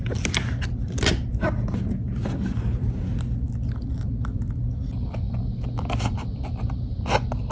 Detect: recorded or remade recorded